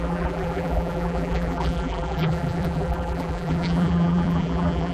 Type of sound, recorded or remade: remade